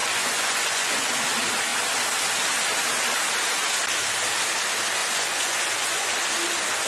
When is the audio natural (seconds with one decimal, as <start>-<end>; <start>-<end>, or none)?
1.1-5.0; 6.1-6.9